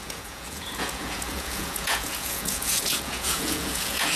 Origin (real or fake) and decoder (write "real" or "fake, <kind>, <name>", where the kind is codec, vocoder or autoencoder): fake, vocoder, Vocos